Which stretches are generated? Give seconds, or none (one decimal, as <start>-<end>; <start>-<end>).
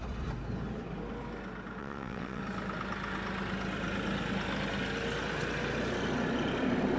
1.8-2.4